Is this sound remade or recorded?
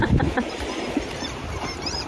remade